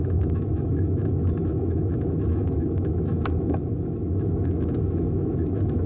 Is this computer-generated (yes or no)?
yes